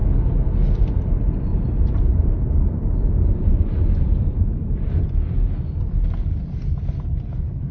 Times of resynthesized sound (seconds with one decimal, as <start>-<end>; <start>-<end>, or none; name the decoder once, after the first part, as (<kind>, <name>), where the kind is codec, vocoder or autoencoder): 1.5-4.9 (vocoder, BigVGAN v2)